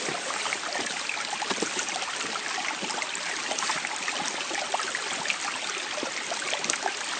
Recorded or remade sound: recorded